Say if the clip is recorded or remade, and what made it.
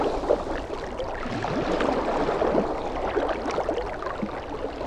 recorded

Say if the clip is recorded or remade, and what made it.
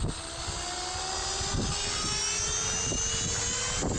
recorded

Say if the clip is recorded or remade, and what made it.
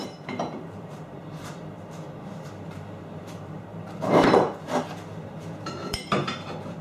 remade, vocoder, BigVGAN v2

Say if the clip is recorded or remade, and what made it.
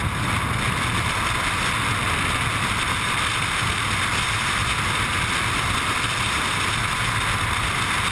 recorded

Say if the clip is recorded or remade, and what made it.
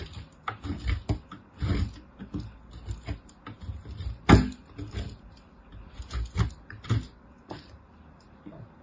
recorded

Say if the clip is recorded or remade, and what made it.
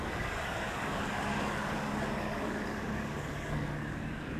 remade, codec, DAC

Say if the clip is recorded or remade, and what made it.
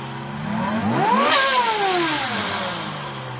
recorded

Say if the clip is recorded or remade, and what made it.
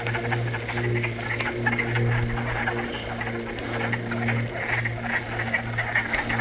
recorded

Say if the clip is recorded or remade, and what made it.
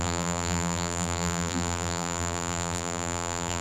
remade, vocoder, BigVGAN v2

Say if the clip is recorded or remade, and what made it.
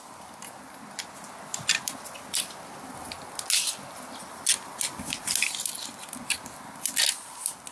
recorded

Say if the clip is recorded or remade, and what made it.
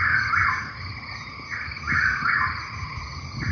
recorded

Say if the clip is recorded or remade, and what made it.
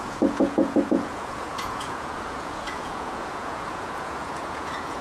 remade, vocoder, Vocos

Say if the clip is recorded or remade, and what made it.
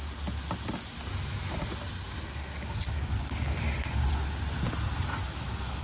recorded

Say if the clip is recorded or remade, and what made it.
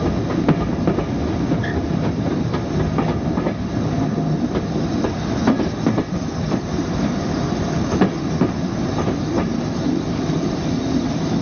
recorded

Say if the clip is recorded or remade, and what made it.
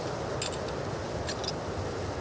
recorded